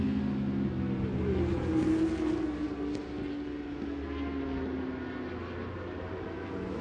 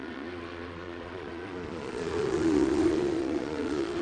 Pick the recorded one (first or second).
first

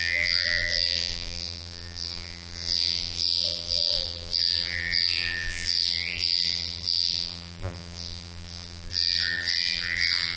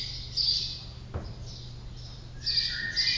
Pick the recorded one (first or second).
second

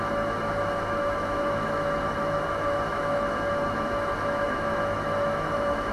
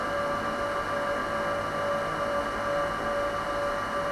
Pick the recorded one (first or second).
second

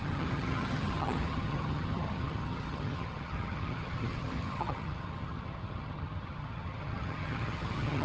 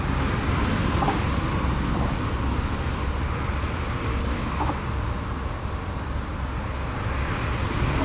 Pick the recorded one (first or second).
second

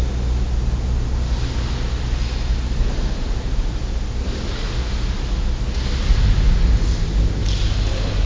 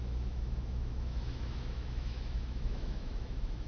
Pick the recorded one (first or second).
first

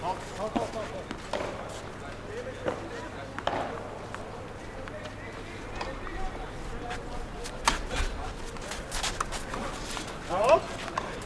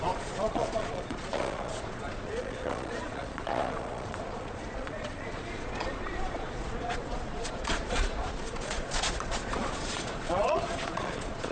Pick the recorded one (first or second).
first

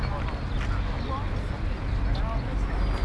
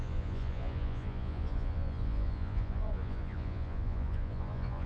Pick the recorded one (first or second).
first